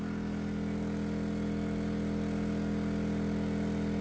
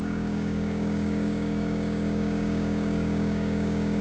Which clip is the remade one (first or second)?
second